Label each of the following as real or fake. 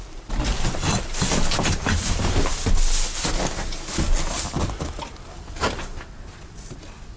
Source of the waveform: real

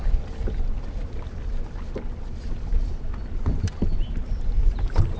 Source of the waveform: real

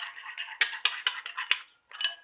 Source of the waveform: real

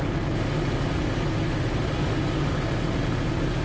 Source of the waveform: real